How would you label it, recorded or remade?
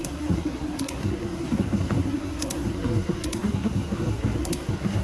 remade